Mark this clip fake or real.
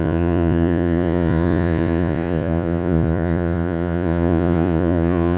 fake